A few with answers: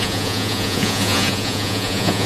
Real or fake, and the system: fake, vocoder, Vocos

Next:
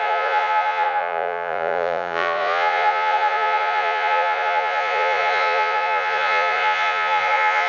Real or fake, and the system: fake, vocoder, Vocos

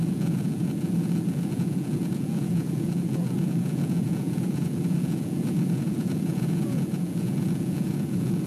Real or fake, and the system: fake, vocoder, Vocos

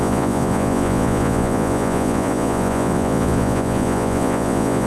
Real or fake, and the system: fake, vocoder, Vocos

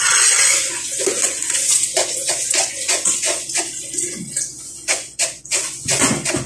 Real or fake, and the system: fake, vocoder, Vocos